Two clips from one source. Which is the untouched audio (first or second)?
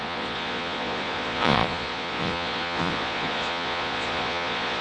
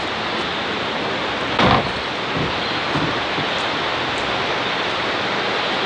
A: second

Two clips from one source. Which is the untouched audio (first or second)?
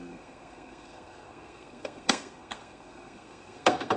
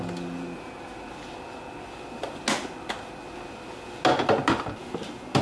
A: second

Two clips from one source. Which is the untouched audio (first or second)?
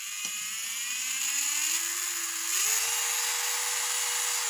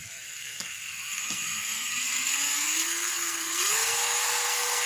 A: first